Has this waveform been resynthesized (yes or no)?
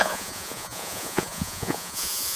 yes